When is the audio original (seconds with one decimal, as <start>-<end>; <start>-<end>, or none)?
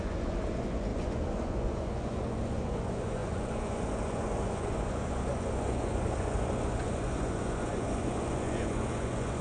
none